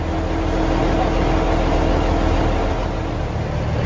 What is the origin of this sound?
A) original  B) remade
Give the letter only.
A